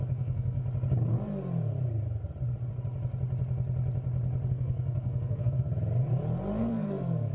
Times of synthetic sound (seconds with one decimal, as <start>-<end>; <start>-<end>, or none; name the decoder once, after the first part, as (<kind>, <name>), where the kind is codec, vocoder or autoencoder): 0.0-0.6 (codec, SNAC); 4.5-5.7; 6.6-7.3